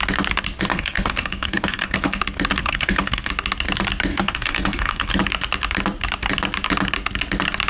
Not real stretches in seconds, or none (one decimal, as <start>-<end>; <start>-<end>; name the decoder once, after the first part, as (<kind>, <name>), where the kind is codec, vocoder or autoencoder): 0.7-2.2 (codec, SNAC); 2.6-3.3; 4.1-5.2

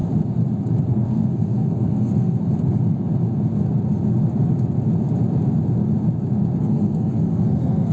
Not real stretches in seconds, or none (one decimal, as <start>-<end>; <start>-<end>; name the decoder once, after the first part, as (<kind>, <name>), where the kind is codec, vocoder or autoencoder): 0.9-2.4 (codec, SNAC); 6.6-7.9

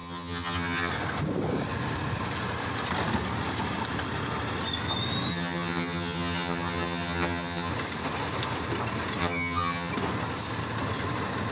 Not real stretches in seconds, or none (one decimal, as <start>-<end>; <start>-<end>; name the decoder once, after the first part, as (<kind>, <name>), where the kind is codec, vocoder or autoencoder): 0.0-0.9 (vocoder, HiFi-GAN); 5.3-7.7; 9.2-9.9

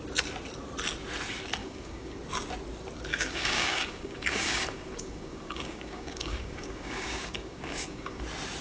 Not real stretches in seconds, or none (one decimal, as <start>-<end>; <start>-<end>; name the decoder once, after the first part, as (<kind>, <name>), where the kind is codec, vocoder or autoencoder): 1.6-2.2 (codec, DAC); 3.1-8.2

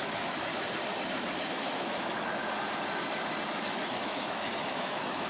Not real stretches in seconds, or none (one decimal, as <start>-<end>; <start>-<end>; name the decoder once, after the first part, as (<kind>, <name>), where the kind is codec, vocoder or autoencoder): 0.0-0.5 (autoencoder, DAC-VAE); 1.5-2.4; 3.5-5.3

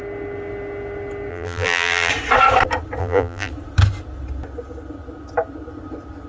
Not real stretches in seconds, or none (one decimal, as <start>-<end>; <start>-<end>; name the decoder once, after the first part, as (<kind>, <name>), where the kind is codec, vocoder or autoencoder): 1.3-2.1 (vocoder, BigVGAN v2); 3.0-3.5

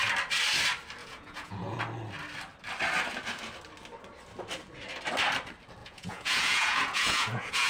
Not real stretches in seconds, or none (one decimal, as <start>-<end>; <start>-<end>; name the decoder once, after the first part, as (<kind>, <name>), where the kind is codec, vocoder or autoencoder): 1.0-1.8 (vocoder, Vocos); 5.8-7.7

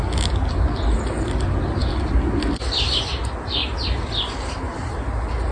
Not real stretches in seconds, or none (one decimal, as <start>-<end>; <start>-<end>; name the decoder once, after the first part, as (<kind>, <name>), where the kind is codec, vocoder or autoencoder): none